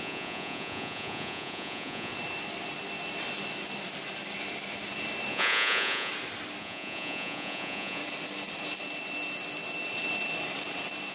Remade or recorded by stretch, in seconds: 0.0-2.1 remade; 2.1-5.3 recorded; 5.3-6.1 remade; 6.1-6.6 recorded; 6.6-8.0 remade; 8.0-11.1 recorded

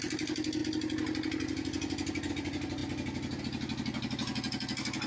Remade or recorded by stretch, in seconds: 0.0-5.1 recorded